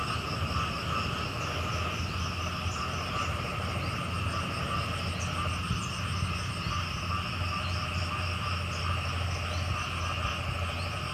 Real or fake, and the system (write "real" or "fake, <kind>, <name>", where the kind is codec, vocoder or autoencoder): real